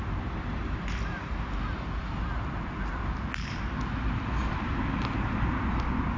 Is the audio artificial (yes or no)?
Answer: no